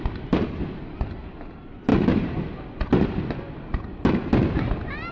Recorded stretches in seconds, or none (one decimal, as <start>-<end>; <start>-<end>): 0.0-5.1